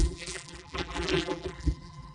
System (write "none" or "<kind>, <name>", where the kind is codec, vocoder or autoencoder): vocoder, BigVGAN v2